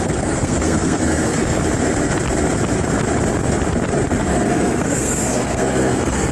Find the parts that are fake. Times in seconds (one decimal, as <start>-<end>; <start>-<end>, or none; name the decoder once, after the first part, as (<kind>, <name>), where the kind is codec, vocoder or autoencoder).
0.0-1.6 (codec, SNAC); 4.2-6.3